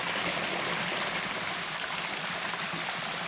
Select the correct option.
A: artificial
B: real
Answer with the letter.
B